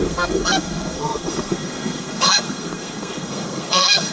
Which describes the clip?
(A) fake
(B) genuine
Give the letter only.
A